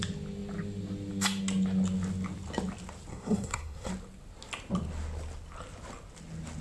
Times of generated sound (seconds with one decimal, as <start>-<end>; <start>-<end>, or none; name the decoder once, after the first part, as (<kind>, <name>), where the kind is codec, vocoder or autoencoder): 3.1-3.9 (codec, SNAC)